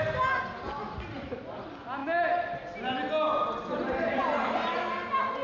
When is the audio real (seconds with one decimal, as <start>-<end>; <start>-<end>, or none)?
0.0-5.4